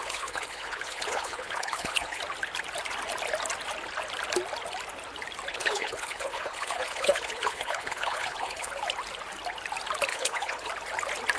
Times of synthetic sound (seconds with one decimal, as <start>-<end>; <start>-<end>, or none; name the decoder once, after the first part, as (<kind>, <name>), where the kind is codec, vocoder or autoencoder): 0.0-2.2 (codec, HILCodec); 5.5-8.7; 10.1-10.7